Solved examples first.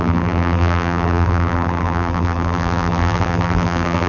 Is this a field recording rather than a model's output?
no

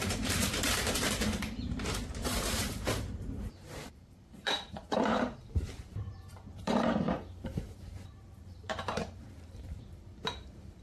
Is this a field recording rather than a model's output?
no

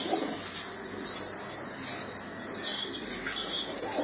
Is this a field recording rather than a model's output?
yes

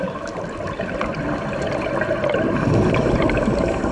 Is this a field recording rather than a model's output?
yes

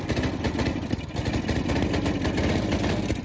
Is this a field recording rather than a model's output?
yes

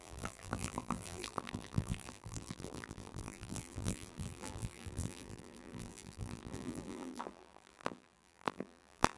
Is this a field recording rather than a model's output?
no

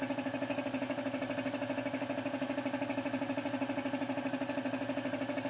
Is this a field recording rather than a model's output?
yes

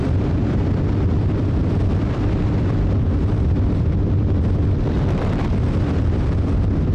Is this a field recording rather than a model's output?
no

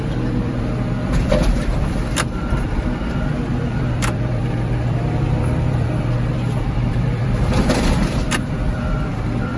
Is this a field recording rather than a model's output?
no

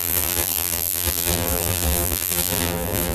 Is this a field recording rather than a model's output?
no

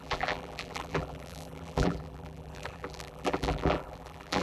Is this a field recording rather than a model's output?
no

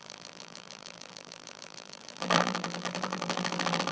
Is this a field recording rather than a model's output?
no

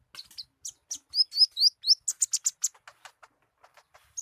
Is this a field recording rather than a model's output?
yes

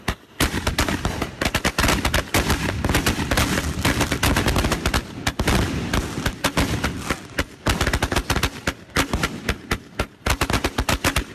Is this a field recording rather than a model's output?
yes